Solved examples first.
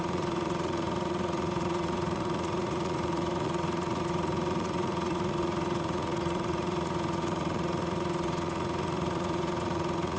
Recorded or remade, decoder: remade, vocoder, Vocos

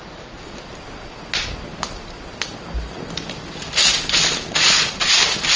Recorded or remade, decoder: recorded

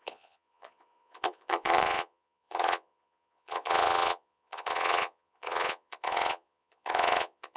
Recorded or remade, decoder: remade, vocoder, Vocos